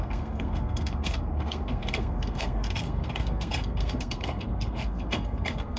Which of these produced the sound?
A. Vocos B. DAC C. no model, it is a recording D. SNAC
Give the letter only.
D